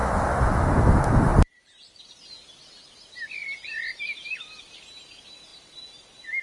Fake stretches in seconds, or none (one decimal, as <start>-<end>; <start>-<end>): 1.3-2.0; 3.4-4.4; 5.5-6.4